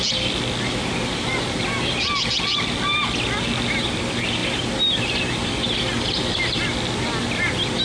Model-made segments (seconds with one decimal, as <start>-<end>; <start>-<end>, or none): none